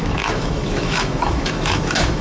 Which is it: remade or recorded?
remade